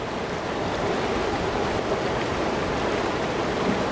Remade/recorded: recorded